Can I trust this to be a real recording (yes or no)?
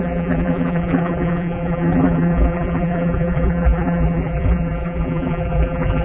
no